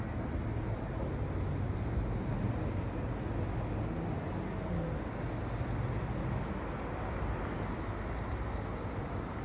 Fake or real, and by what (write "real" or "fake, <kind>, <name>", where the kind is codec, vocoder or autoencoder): real